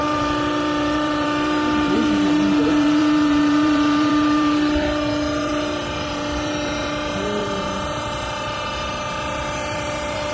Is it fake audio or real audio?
fake